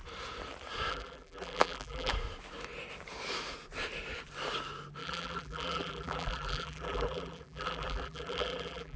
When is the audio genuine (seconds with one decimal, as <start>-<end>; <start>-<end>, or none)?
0.0-0.9; 2.1-5.0